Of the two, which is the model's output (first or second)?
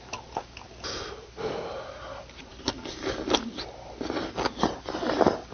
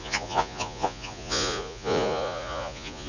second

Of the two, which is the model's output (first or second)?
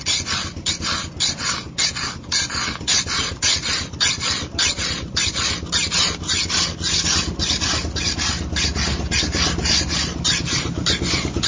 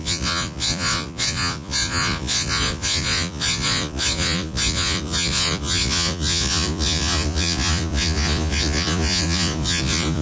second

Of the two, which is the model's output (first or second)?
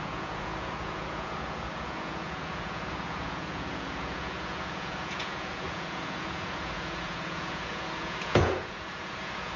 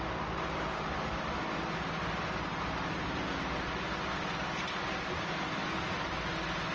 first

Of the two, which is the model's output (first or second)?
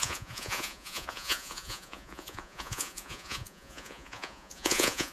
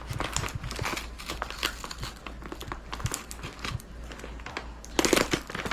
first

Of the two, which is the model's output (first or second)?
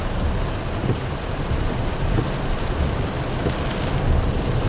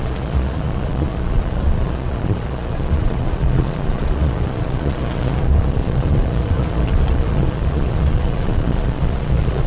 second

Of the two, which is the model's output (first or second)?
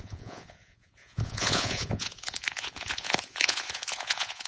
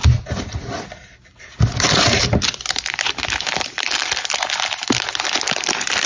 first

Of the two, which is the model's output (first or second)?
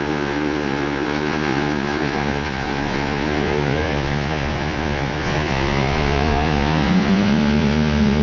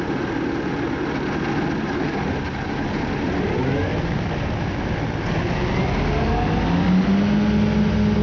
first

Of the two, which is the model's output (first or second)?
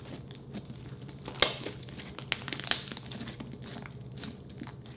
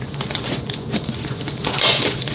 second